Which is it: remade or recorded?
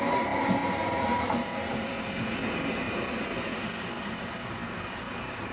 recorded